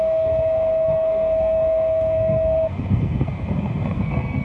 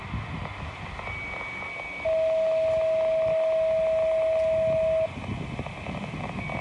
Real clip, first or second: second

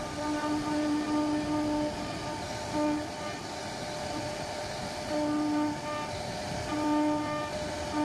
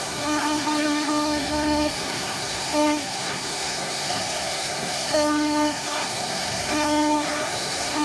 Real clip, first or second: first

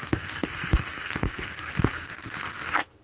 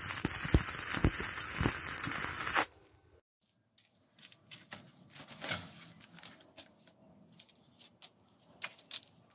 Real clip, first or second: second